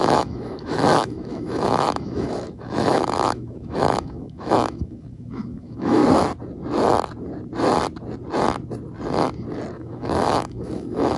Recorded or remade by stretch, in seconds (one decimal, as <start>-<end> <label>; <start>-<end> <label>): 0.0-6.0 remade; 6.0-9.7 recorded; 9.7-11.2 remade